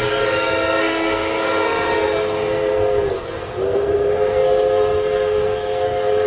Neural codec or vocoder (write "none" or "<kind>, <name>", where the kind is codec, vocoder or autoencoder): codec, SNAC